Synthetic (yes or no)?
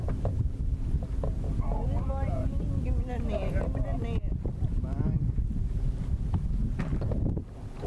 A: no